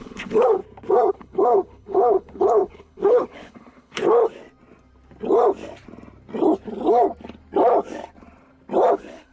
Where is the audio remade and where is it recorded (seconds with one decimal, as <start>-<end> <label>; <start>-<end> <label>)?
0.0-0.6 remade; 0.6-1.1 recorded; 1.1-4.1 remade; 4.1-8.9 recorded; 8.9-9.3 remade